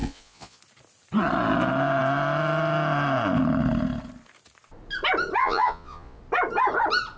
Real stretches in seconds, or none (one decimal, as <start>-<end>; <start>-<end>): 0.6-5.4; 6.2-7.2

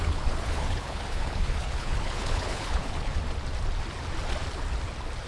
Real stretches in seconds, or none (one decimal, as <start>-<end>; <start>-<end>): 3.2-5.3

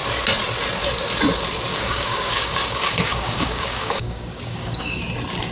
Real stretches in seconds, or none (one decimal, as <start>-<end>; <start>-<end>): 0.0-1.7; 5.0-5.5

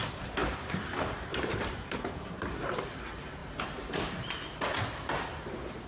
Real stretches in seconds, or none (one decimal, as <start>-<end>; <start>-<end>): 0.0-0.4; 2.6-3.4; 4.2-5.9

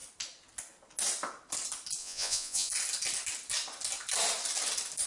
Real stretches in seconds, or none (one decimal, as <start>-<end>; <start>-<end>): 0.0-2.0; 2.7-5.1

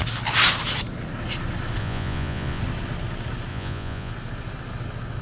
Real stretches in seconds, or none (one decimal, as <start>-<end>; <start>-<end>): 0.0-1.8; 2.6-3.5; 4.1-5.2